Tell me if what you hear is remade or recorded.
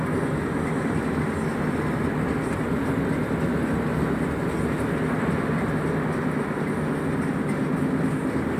recorded